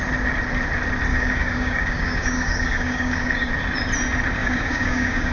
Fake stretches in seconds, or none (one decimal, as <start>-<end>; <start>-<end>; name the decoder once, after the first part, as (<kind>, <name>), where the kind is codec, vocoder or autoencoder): 1.1-3.5 (codec, DAC); 4.4-5.3